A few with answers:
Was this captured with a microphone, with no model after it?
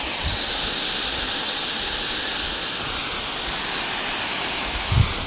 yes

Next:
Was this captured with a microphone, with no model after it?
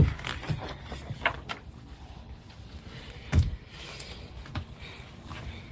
yes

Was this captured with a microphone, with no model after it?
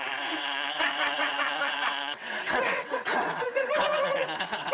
no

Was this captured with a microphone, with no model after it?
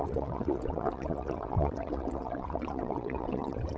no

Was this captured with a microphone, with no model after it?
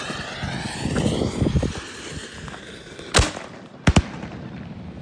yes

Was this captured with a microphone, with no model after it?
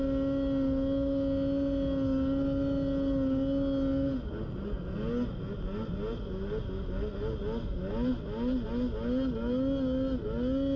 yes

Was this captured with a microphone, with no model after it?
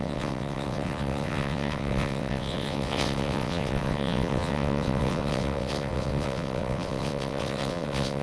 no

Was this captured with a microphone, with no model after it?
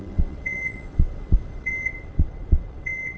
no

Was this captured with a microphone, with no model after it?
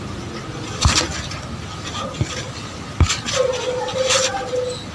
yes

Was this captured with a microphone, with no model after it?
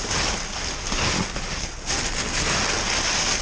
yes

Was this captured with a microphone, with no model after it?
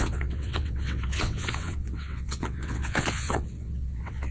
no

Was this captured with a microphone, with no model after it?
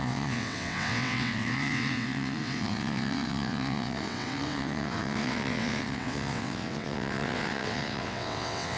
no